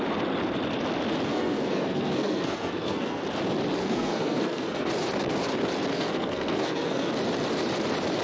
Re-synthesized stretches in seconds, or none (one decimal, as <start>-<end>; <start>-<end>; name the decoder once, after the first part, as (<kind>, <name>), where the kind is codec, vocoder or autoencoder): 1.3-3.2 (codec, SNAC); 3.8-4.9; 5.9-7.1